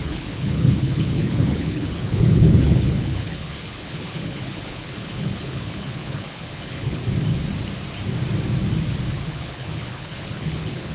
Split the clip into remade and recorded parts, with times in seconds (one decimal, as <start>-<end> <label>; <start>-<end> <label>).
0.0-7.0 remade; 7.0-9.1 recorded; 9.1-10.9 remade